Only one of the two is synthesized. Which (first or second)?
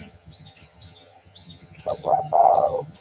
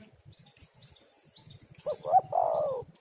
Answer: first